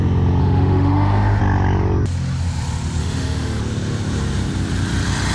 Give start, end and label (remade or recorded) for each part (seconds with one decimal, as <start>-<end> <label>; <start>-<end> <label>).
0.0-0.4 recorded; 0.4-1.4 remade; 1.4-3.0 recorded; 3.0-3.6 remade; 3.6-5.3 recorded

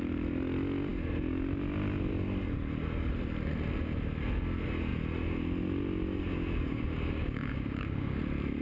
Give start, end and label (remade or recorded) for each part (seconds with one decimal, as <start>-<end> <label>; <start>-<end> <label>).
0.0-6.7 recorded; 6.7-8.2 remade; 8.2-8.6 recorded